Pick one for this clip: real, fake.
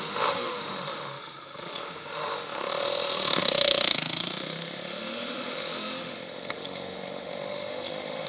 fake